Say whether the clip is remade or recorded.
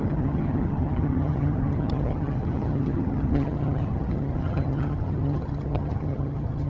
remade